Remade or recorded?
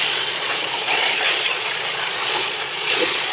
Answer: remade